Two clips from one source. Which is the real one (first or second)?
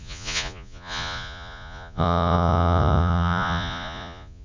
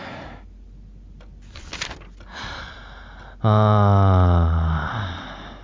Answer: second